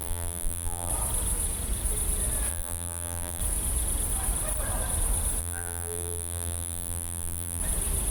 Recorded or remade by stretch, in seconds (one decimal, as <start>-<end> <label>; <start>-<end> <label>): 0.0-0.9 remade; 0.9-2.5 recorded; 2.5-3.4 remade; 3.4-5.4 recorded; 5.4-7.6 remade; 7.6-8.1 recorded